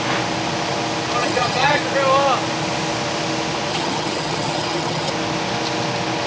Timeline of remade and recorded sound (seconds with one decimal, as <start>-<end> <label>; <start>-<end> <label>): 0.0-1.2 recorded; 1.2-1.8 remade; 1.8-3.7 recorded; 3.7-5.1 remade; 5.1-6.3 recorded

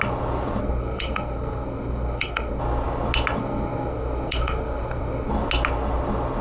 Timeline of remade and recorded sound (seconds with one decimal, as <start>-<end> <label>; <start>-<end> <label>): 0.0-0.6 recorded; 0.6-2.6 remade; 2.6-3.4 recorded; 3.4-5.3 remade; 5.3-6.4 recorded

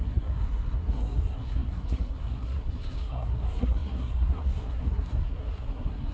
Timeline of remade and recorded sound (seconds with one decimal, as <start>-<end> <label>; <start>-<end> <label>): 0.0-6.1 remade

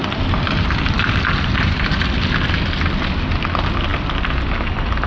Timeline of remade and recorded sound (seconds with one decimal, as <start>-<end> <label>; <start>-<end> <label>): 0.0-2.0 remade; 2.0-5.1 recorded

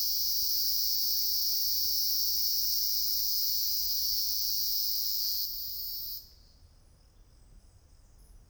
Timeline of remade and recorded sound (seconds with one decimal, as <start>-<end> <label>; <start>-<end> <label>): 0.0-8.5 recorded

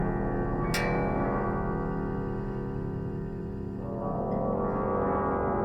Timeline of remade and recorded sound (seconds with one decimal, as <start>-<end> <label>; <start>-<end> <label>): 0.0-5.6 recorded

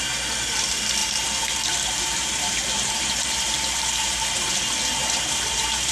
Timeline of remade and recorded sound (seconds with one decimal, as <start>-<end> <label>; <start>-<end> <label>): 0.0-1.0 recorded; 1.0-4.5 remade; 4.5-5.0 recorded; 5.0-5.9 remade